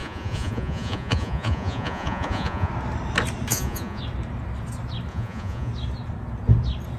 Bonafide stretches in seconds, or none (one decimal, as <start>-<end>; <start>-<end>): 2.7-3.5; 4.0-5.1; 5.7-7.0